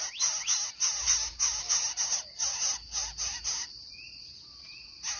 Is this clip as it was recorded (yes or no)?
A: yes